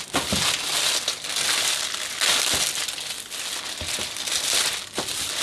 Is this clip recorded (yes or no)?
yes